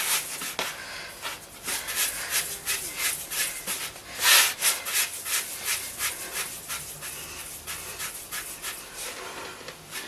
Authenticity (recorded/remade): recorded